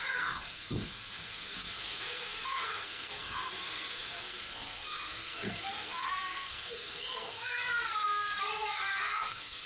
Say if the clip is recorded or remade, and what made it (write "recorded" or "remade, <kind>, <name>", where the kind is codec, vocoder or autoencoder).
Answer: remade, codec, SNAC